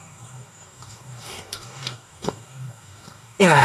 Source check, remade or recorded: remade